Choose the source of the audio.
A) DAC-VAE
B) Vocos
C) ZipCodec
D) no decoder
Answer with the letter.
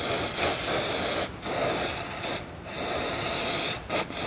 D